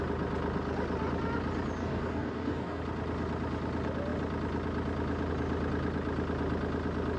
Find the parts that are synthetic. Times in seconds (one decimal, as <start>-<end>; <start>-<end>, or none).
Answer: 1.8-2.8